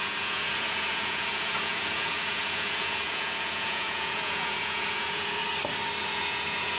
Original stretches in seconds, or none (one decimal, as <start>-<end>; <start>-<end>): 5.4-6.0

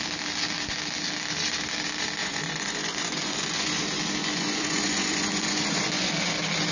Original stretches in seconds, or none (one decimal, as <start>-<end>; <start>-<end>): 0.0-2.2; 3.8-4.2; 6.1-6.7

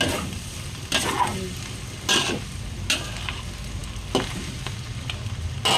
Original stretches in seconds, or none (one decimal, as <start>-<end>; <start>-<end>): 0.0-5.8

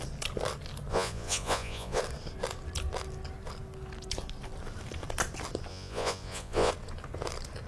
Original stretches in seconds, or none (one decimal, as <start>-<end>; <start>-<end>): 0.0-0.9; 2.0-5.7; 6.7-7.7

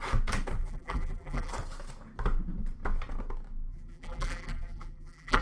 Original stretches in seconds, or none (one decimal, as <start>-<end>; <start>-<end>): 0.0-0.6; 1.5-3.7

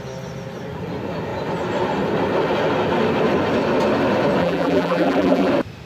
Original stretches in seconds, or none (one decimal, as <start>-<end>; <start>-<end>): 0.0-4.4; 5.5-5.9

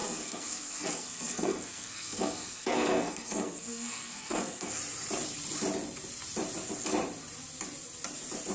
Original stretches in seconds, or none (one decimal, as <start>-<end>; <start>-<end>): 4.8-8.5